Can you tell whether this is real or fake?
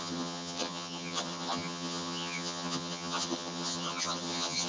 fake